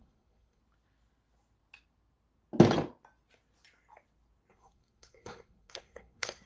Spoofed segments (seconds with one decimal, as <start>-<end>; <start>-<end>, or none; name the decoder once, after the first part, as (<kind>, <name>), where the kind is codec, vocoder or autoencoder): 0.0-0.6 (codec, SNAC); 4.5-6.5